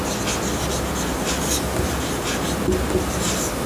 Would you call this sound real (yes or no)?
yes